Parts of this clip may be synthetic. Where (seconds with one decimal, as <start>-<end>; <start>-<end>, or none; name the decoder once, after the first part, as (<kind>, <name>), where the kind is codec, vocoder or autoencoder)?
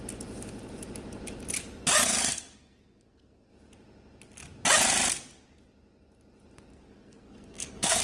2.0-3.5 (codec, SNAC); 6.7-8.0